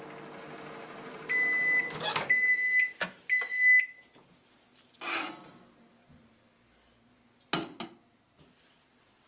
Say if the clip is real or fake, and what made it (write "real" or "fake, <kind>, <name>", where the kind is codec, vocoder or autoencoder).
real